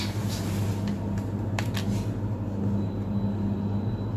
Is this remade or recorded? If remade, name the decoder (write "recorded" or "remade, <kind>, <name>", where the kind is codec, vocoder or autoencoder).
recorded